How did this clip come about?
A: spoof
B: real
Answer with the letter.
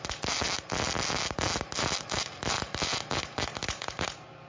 B